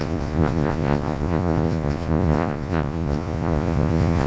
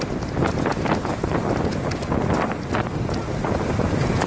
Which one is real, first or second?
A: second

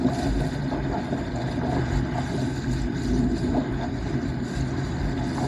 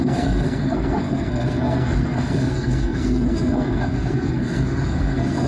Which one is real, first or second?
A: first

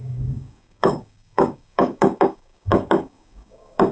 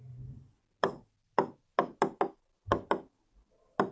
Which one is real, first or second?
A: second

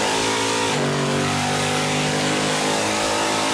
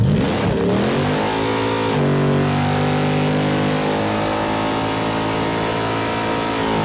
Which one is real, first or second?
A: second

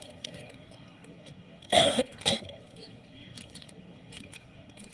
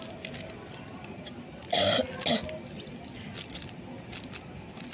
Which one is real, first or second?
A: second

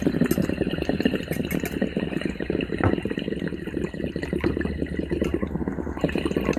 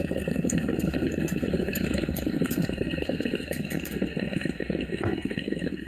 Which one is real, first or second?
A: first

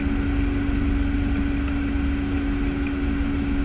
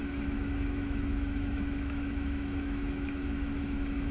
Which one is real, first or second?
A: first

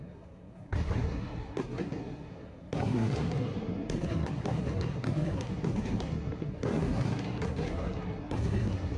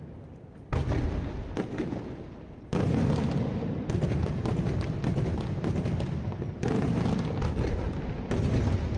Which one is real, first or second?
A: second